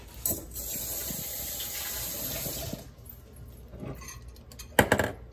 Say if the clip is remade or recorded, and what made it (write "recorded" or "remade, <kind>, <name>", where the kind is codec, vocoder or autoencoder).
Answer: recorded